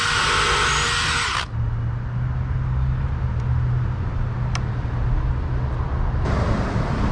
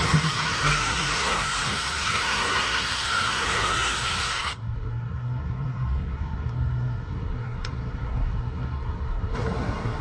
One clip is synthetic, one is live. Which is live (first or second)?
first